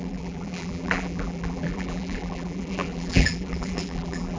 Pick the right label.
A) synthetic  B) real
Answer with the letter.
A